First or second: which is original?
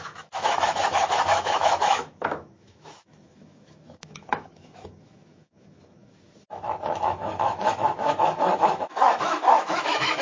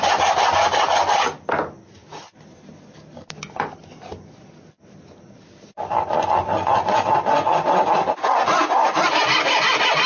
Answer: second